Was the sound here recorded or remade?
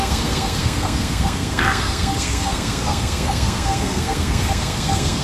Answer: remade